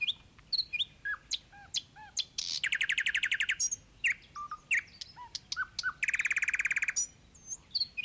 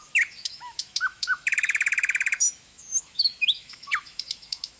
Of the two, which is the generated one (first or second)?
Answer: second